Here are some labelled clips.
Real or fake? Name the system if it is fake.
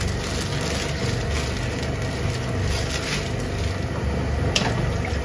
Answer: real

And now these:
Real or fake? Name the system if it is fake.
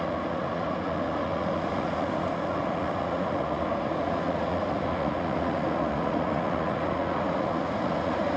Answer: fake, vocoder, Vocos